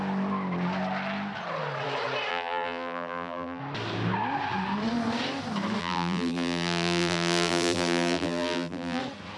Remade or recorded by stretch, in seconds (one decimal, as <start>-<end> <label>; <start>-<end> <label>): 0.0-2.3 recorded; 2.3-3.6 remade; 3.6-5.8 recorded; 5.8-9.0 remade; 9.0-9.4 recorded